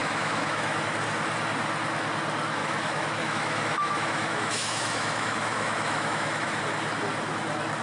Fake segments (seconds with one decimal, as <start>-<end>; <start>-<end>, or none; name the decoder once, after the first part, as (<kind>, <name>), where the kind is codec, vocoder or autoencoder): 0.0-0.8 (autoencoder, DAC-VAE); 2.6-6.6